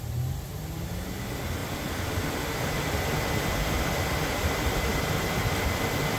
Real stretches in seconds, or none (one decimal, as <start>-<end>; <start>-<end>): 0.0-6.2